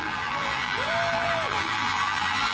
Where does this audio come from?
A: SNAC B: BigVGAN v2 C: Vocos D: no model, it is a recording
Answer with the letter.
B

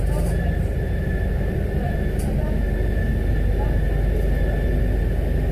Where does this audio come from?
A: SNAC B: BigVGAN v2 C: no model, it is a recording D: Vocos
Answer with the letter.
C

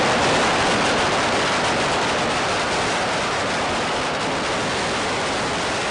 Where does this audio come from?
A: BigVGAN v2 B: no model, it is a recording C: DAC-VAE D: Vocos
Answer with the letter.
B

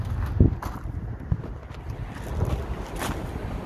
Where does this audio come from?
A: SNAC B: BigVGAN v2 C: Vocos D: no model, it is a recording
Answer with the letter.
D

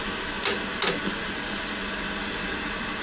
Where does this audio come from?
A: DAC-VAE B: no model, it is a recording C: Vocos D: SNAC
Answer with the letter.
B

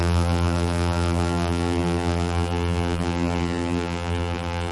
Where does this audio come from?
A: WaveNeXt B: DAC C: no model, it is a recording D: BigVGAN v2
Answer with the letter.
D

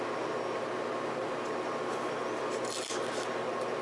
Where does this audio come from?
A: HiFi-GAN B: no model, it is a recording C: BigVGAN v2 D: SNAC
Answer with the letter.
B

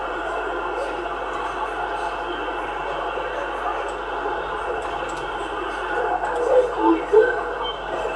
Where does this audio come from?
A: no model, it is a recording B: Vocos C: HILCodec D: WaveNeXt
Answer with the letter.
A